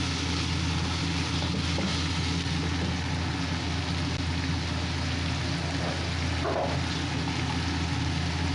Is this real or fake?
real